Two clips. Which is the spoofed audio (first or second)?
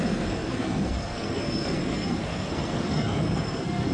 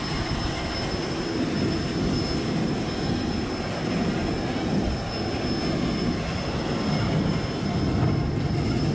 first